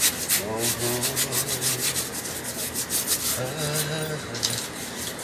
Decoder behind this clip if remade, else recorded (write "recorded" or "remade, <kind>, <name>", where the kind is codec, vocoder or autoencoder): recorded